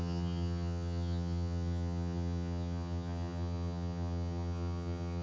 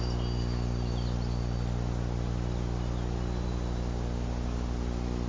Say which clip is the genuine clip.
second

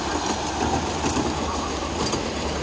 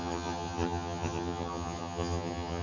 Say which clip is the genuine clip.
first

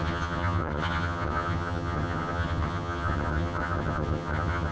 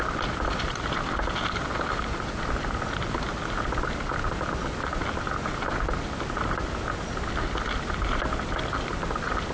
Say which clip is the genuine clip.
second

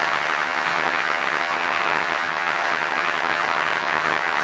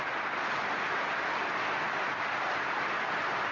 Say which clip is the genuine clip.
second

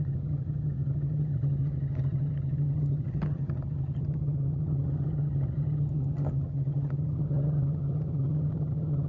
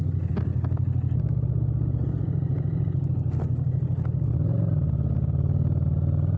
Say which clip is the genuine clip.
second